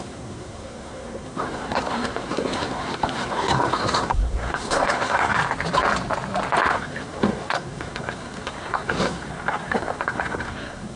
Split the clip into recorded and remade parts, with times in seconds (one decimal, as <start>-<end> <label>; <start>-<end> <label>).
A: 0.0-5.4 remade; 5.4-6.7 recorded; 6.7-11.0 remade